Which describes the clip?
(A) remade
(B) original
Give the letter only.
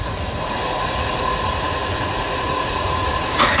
A